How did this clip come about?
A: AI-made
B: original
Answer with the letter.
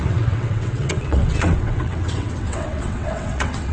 A